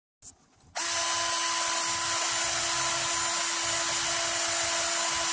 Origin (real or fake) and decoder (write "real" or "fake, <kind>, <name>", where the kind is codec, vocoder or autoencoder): real